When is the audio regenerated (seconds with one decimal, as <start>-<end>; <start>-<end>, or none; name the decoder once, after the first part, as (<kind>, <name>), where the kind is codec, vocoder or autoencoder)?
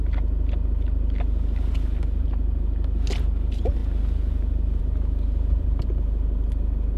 none